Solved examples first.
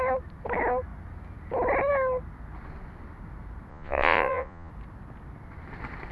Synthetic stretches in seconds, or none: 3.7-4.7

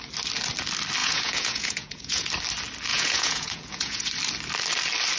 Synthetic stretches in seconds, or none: 1.0-2.3; 2.9-4.1

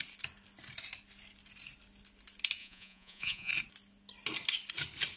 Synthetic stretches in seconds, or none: 2.6-3.5

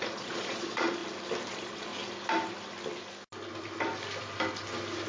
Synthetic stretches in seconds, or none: 0.0-1.0; 1.5-1.9